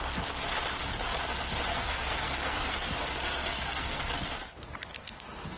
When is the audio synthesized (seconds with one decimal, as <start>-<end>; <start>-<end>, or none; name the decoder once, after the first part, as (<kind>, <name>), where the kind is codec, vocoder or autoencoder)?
1.7-4.1 (codec, SNAC); 4.9-5.6